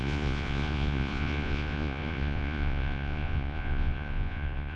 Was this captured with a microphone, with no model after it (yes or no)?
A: no